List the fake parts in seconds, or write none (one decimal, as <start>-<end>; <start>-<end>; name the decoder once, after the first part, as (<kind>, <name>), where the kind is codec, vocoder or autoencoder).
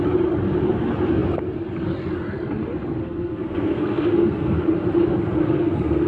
3.0-4.6 (codec, SNAC); 5.4-6.1